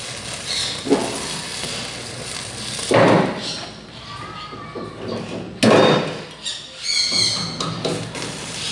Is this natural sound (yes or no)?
yes